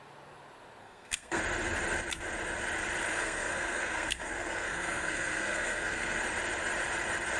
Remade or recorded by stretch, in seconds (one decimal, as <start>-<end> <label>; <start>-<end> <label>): 0.0-0.8 recorded; 0.8-1.4 remade; 1.4-3.1 recorded; 3.1-6.2 remade; 6.2-7.4 recorded